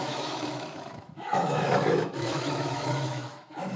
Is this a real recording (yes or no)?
no